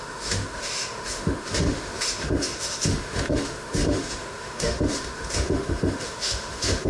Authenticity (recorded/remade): remade